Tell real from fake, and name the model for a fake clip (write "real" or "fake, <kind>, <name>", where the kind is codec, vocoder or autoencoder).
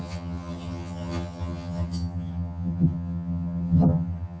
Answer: fake, vocoder, HiFi-GAN